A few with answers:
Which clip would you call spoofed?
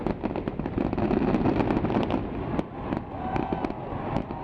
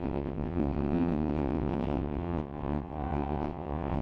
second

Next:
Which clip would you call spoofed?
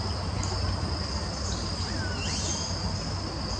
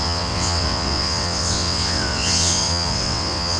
second